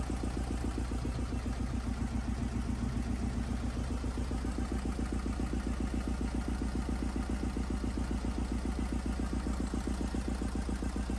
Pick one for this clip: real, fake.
real